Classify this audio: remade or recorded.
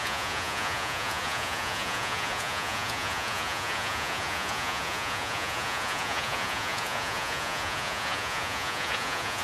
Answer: remade